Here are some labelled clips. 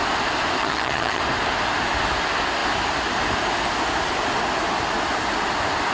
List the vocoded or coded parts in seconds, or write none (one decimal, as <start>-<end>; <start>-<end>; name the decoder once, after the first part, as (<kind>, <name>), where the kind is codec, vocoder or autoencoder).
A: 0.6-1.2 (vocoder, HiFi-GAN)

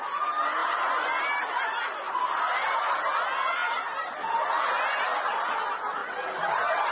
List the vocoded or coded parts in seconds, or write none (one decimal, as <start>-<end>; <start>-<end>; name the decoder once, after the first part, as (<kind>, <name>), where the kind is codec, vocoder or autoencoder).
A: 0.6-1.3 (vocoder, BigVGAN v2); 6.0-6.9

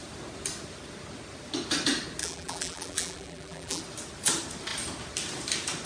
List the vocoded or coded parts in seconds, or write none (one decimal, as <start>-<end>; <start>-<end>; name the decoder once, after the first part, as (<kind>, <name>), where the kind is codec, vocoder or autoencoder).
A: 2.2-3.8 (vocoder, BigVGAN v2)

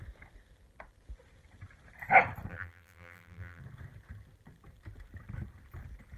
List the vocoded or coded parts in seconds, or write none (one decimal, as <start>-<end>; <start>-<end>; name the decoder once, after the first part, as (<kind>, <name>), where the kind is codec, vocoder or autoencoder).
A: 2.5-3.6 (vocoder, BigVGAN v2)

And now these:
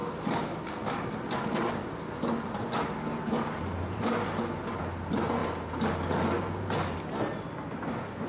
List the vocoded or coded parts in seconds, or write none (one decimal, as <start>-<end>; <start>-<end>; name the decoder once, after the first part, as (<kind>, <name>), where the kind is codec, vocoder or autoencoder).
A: none

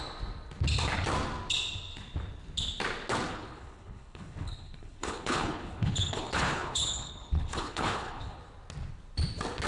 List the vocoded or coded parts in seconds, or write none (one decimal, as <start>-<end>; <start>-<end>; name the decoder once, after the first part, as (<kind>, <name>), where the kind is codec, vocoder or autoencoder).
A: 3.3-8.4 (codec, HILCodec)